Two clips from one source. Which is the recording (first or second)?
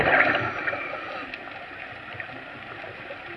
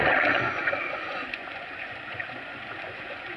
first